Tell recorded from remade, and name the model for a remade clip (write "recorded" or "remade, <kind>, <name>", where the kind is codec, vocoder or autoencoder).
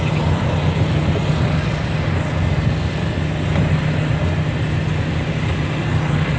recorded